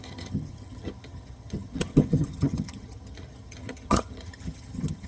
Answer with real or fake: fake